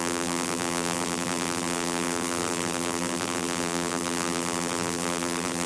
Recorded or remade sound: remade